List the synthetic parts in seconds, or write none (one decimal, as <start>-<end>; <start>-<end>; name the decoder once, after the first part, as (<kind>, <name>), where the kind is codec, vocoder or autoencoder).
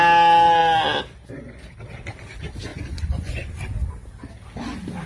2.7-3.5 (vocoder, Vocos)